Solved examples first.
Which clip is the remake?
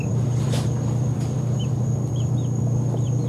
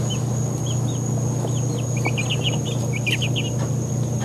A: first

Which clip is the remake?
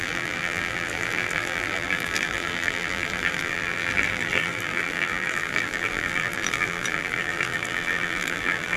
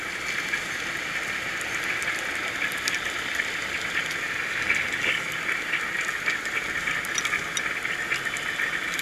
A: first